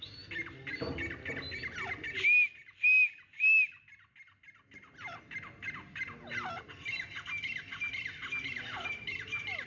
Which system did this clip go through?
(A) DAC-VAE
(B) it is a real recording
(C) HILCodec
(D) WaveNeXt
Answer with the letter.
B